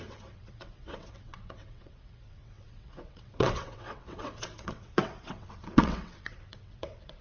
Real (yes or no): no